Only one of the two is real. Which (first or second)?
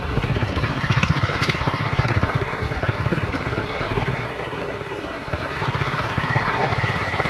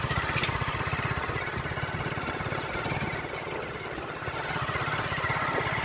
second